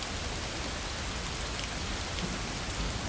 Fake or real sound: real